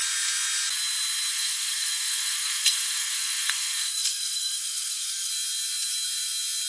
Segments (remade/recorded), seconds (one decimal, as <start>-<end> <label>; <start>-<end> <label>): 0.0-1.3 recorded; 1.3-5.3 remade; 5.3-6.7 recorded